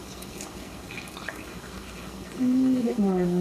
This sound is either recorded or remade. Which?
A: remade